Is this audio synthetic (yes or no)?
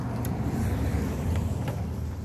no